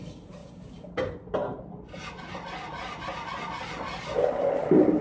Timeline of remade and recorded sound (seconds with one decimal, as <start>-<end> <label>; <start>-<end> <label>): 0.0-5.0 recorded